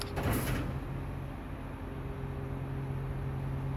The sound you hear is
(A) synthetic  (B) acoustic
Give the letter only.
B